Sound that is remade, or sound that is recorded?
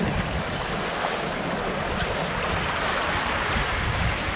recorded